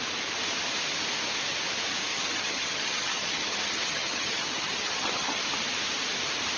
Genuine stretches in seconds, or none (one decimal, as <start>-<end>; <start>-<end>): 0.0-2.1; 5.4-6.6